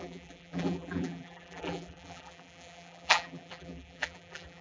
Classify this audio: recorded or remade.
remade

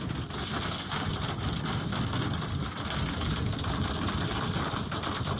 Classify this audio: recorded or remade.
recorded